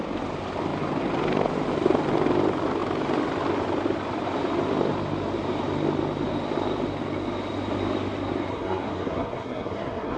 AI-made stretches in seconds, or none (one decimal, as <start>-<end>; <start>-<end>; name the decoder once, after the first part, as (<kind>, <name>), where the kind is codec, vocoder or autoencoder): 8.5-10.2 (codec, SNAC)